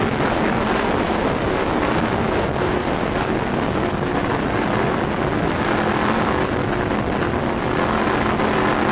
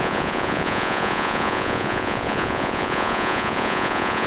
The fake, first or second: second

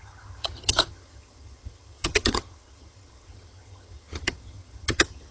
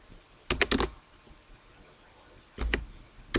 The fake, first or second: first